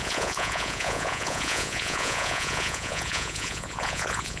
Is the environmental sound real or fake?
fake